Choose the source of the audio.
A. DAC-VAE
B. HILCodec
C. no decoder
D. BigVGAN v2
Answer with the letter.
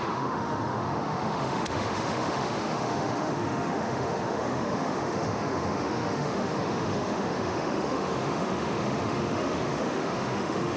A